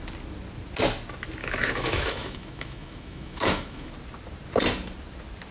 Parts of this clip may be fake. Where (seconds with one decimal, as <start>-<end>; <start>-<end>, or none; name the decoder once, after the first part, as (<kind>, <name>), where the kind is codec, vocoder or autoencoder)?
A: 1.4-3.9 (autoencoder, DAC-VAE)